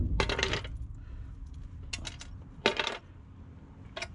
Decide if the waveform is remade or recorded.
recorded